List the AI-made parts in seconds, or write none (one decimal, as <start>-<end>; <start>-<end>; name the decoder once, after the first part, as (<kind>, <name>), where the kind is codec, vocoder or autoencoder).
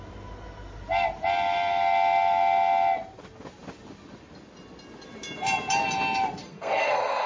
6.4-7.3 (codec, SNAC)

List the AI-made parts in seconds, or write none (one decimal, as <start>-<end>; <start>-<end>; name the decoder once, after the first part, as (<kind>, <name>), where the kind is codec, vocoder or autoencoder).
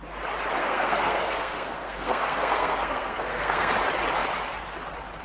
0.6-3.7 (codec, SNAC)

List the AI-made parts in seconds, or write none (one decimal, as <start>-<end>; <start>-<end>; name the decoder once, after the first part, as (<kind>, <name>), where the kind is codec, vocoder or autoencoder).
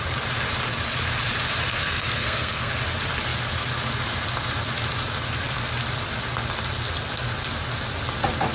1.7-2.7 (codec, SNAC)